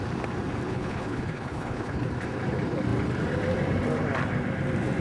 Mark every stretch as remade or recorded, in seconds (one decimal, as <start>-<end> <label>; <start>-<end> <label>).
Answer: 0.0-0.7 recorded; 0.7-2.1 remade; 2.1-5.0 recorded

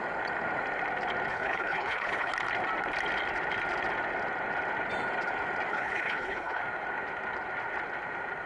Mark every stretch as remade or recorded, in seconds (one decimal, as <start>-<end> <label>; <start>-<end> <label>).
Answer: 0.0-1.3 recorded; 1.3-2.3 remade; 2.3-5.7 recorded; 5.7-6.6 remade; 6.6-8.5 recorded

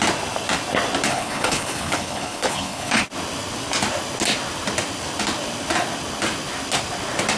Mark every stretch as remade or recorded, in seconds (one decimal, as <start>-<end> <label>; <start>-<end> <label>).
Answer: 0.0-1.1 recorded; 1.1-3.0 remade; 3.0-7.4 recorded

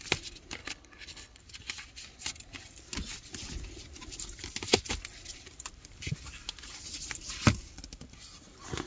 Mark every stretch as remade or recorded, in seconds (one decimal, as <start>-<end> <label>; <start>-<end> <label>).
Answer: 0.0-0.6 recorded; 0.6-1.4 remade; 1.4-8.9 recorded

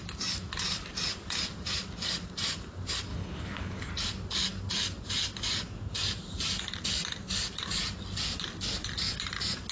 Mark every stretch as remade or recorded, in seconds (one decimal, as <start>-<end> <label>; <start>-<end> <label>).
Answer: 0.0-3.1 recorded; 3.1-3.9 remade; 3.9-9.7 recorded

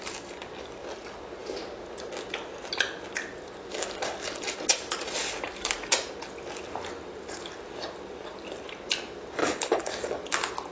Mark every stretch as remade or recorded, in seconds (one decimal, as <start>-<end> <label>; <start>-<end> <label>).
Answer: 0.0-9.4 recorded; 9.4-9.9 remade; 9.9-10.7 recorded

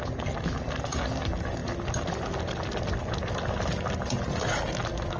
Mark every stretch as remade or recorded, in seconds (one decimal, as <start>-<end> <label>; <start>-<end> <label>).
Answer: 0.0-5.2 recorded